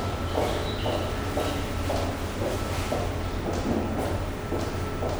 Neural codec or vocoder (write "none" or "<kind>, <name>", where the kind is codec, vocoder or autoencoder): none